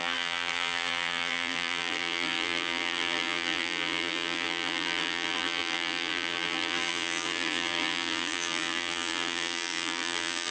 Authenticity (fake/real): fake